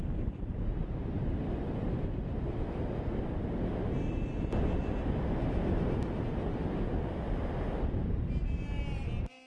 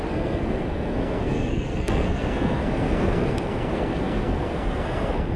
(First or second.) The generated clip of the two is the second